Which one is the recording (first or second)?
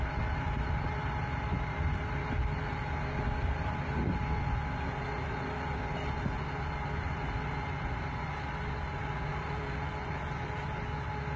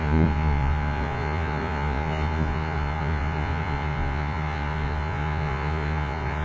first